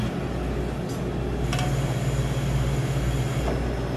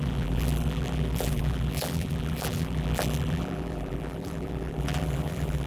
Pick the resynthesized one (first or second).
second